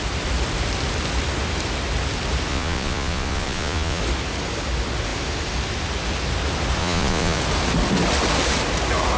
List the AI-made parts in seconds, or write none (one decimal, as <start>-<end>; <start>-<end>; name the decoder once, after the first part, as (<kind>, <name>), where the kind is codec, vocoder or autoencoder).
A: 2.5-4.0 (vocoder, Vocos); 6.8-7.4